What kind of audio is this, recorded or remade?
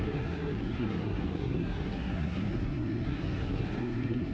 remade